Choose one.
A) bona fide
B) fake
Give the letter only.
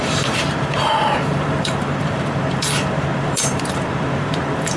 B